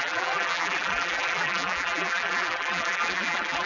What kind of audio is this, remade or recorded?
remade